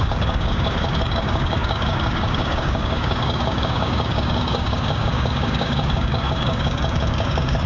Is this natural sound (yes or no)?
no